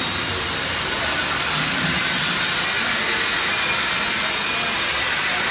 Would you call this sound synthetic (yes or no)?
no